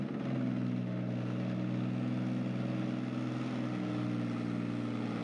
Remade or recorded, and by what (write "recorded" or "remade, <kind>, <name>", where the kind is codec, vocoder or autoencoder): recorded